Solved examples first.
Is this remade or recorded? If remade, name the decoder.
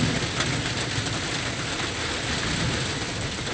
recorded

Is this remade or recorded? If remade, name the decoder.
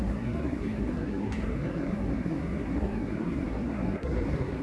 remade, codec, SNAC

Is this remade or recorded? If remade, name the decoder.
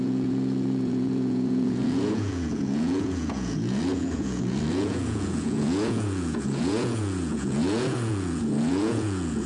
remade, vocoder, Vocos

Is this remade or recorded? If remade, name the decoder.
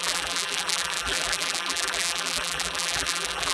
remade, vocoder, BigVGAN v2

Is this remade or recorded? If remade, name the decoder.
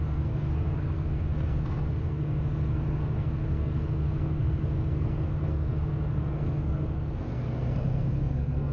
remade, codec, SNAC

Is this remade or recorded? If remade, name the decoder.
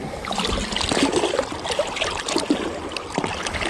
recorded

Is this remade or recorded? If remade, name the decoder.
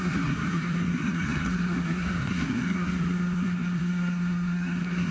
remade, codec, SNAC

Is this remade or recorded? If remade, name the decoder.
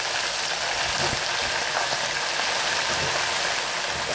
recorded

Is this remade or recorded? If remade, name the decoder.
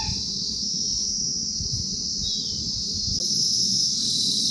recorded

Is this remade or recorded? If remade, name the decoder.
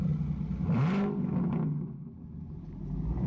recorded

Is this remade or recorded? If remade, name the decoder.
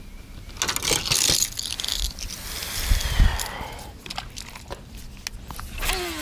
recorded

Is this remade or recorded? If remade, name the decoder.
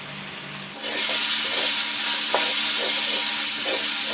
recorded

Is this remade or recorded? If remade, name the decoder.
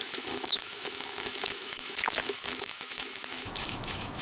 remade, autoencoder, DAC-VAE